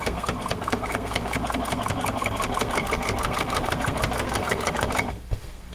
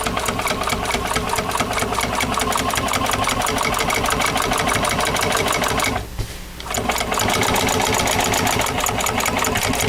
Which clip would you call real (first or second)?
second